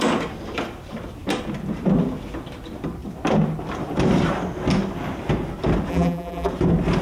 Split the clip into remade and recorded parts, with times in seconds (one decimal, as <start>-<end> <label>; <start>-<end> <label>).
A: 0.0-5.9 recorded; 5.9-6.5 remade; 6.5-7.0 recorded